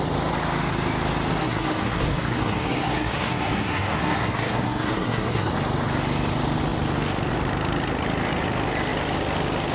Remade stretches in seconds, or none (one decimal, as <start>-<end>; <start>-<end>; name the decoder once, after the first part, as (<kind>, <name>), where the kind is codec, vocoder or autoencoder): 1.4-5.5 (codec, SNAC)